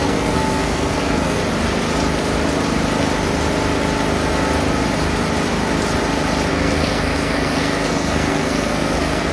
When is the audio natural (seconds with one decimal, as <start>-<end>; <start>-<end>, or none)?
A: 1.4-6.5